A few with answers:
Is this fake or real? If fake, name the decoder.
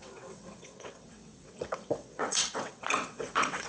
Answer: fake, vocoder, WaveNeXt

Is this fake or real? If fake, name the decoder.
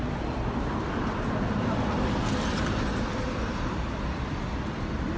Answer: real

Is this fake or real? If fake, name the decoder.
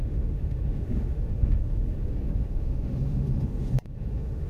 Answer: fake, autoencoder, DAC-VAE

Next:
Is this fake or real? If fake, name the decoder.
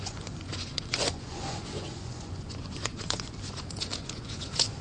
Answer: fake, vocoder, Vocos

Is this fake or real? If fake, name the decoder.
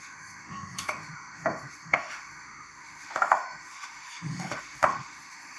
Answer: fake, autoencoder, DAC-VAE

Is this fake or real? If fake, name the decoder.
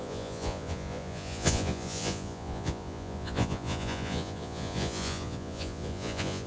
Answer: fake, vocoder, Vocos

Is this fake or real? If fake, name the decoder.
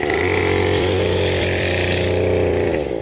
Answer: fake, vocoder, BigVGAN v2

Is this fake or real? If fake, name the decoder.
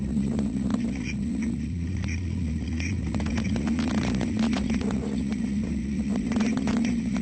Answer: fake, vocoder, Vocos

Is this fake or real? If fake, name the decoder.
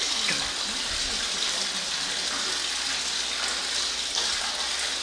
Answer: real